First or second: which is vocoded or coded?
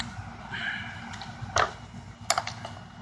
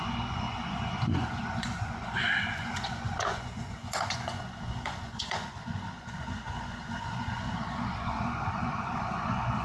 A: second